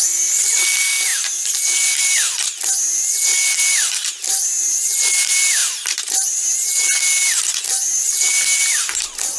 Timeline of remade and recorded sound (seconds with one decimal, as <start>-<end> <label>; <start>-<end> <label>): 0.0-9.4 recorded

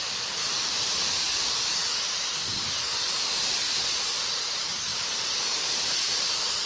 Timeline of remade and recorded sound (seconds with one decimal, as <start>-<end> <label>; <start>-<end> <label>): 0.0-1.0 remade; 1.0-4.3 recorded; 4.3-6.7 remade

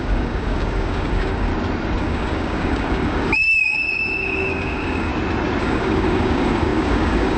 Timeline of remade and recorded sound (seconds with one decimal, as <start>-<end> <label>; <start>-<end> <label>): 0.0-1.5 remade; 1.5-2.0 recorded; 2.0-5.1 remade; 5.1-5.6 recorded; 5.6-7.4 remade

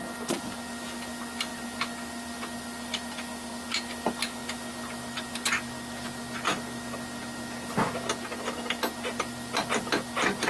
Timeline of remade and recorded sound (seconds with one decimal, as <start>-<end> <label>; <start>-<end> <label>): 0.0-10.5 recorded

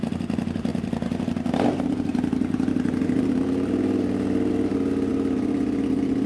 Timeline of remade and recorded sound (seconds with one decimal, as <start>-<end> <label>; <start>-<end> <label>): 0.0-6.3 recorded